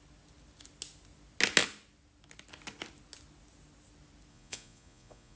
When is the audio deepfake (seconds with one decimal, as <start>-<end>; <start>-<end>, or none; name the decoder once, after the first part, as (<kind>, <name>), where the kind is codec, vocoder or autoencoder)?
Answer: 4.3-5.4 (vocoder, Vocos)